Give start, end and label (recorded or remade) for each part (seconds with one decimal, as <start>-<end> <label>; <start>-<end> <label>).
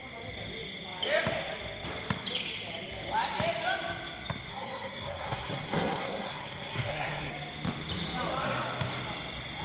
0.0-4.5 recorded; 4.5-7.3 remade; 7.3-9.6 recorded